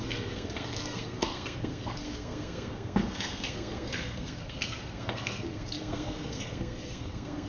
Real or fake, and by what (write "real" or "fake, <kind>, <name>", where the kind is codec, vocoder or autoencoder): fake, codec, SNAC